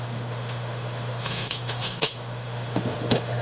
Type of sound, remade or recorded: remade